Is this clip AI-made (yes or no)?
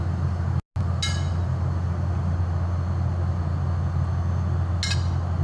no